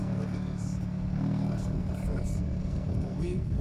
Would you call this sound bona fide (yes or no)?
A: no